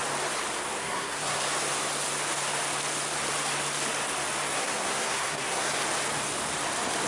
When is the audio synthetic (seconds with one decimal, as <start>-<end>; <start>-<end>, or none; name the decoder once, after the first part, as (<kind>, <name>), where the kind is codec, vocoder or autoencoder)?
0.8-1.4 (codec, SNAC); 4.5-5.7